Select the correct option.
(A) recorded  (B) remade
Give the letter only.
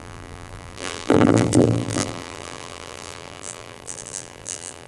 B